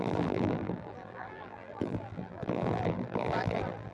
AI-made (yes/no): yes